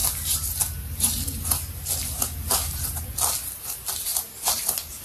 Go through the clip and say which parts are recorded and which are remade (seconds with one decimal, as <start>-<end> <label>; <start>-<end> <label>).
0.0-5.0 recorded